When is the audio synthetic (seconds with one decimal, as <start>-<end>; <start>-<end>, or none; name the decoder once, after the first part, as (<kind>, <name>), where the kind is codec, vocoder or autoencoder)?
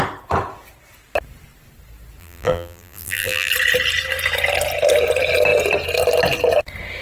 2.2-3.5 (vocoder, BigVGAN v2)